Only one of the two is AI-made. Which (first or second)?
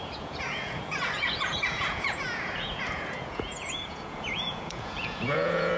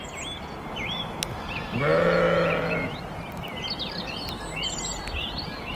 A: first